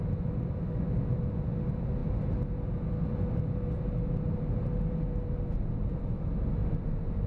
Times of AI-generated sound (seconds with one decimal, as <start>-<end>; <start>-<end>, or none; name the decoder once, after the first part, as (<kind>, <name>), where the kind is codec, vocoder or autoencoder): 6.6-7.3 (vocoder, BigVGAN v2)